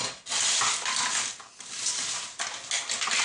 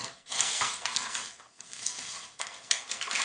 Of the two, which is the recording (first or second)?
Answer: first